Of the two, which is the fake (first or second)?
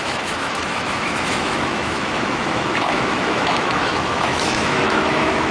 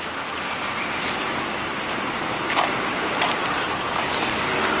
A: first